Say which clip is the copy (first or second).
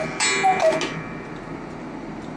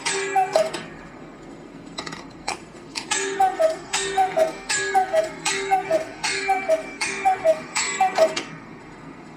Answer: second